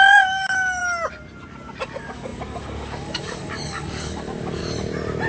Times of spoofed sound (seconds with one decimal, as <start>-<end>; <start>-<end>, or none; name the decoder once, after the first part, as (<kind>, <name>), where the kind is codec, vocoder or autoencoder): 0.0-0.8 (codec, DAC); 1.8-4.6